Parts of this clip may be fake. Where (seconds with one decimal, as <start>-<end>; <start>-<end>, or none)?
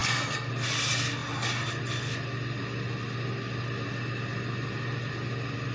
0.0-0.5